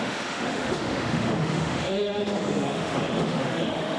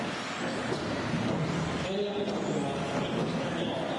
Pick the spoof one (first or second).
first